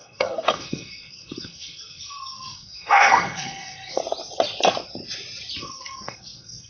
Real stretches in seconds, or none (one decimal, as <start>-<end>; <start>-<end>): 4.0-5.6